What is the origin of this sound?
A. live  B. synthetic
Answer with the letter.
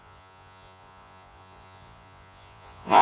B